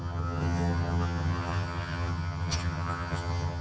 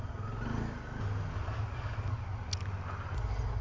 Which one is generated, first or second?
first